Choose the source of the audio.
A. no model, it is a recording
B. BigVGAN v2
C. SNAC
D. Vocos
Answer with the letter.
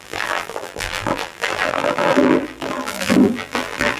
B